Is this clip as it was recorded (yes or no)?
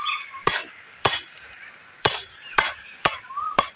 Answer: no